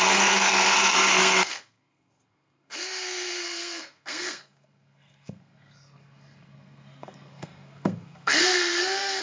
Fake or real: fake